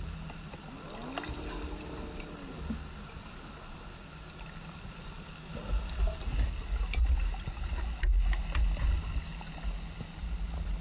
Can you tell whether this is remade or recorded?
recorded